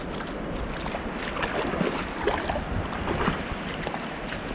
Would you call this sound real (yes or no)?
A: yes